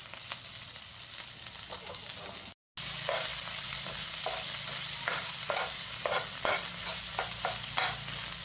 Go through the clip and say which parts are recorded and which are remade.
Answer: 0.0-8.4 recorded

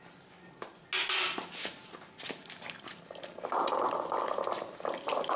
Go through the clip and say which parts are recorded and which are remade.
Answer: 0.0-5.4 recorded

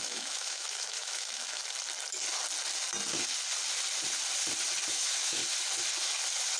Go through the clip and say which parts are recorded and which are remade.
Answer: 0.0-1.6 remade; 1.6-4.9 recorded; 4.9-5.4 remade; 5.4-6.6 recorded

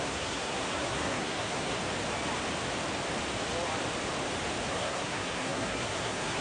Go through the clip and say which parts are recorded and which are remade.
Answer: 0.0-1.8 remade; 1.8-4.7 recorded; 4.7-6.4 remade

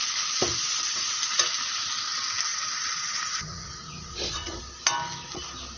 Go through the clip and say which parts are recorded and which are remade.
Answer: 0.0-2.5 recorded; 2.5-4.6 remade; 4.6-5.8 recorded

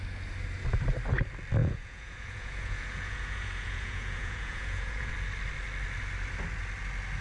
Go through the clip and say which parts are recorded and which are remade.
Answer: 0.0-1.6 recorded; 1.6-5.1 remade; 5.1-7.2 recorded